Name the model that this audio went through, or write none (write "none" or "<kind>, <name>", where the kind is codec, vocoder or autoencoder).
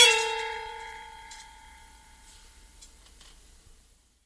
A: vocoder, BigVGAN v2